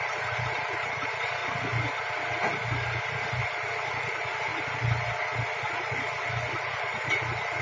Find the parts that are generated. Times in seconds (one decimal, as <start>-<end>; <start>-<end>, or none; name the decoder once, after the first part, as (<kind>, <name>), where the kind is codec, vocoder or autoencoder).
0.0-1.4 (vocoder, BigVGAN v2); 3.1-4.5; 5.9-7.6